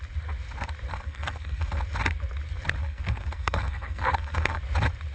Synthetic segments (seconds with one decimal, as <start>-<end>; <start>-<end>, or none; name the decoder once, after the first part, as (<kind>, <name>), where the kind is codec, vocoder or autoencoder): 0.9-1.8 (codec, SNAC); 2.8-4.6